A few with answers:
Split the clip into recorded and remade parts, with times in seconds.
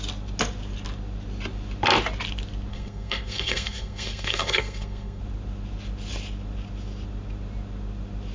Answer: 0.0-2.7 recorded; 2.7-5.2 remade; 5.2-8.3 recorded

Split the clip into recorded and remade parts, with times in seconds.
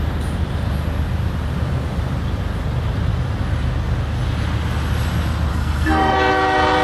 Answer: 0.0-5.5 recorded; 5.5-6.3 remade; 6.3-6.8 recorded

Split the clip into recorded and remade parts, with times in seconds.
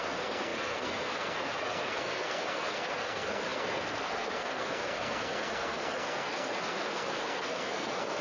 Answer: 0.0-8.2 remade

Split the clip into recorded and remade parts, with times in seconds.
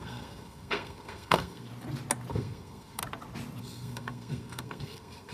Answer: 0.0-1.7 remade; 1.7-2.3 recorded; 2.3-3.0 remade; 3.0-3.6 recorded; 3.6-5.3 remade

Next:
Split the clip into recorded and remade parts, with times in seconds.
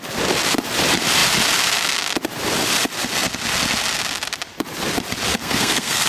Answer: 0.0-5.3 recorded; 5.3-6.1 remade